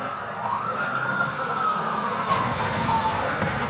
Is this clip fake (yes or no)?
yes